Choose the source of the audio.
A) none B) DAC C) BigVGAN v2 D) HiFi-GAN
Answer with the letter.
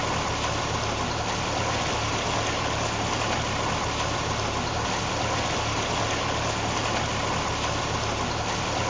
A